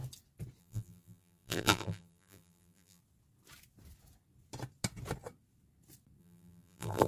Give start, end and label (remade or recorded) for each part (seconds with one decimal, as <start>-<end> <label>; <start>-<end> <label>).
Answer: 0.0-0.6 recorded; 0.6-3.0 remade; 3.0-6.2 recorded; 6.2-7.1 remade